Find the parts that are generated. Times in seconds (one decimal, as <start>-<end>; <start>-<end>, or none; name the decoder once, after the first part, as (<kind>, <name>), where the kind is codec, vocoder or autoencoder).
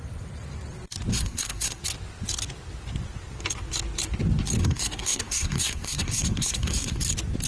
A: 1.1-1.8 (codec, SNAC); 4.6-7.0